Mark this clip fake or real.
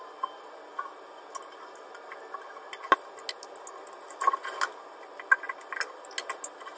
real